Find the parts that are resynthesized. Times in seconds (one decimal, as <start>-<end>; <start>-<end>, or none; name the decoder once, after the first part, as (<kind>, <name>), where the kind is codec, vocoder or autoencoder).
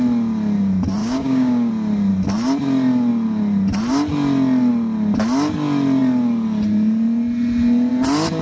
1.0-1.7 (codec, DAC)